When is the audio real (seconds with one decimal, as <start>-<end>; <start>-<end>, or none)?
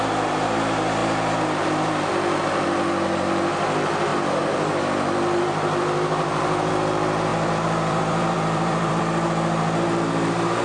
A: 0.0-1.0; 2.1-4.1; 6.7-7.3; 9.0-10.6